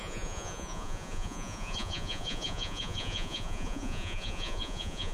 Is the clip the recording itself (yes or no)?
no